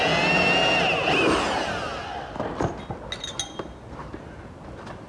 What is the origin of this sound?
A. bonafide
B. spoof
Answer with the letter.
A